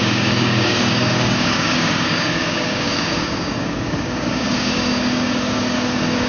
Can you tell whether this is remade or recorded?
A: remade